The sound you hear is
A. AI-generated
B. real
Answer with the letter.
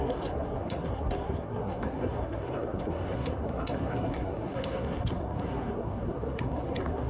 A